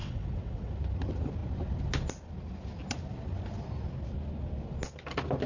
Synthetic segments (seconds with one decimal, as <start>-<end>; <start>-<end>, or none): 0.0-0.7